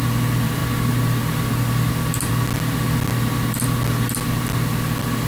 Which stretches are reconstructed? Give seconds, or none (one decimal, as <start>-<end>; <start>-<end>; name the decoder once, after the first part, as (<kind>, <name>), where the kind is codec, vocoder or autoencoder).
none